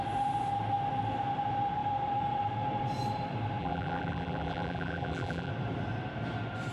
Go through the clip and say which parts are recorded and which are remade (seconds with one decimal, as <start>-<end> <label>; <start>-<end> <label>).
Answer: 0.0-3.6 recorded; 3.6-5.5 remade; 5.5-6.7 recorded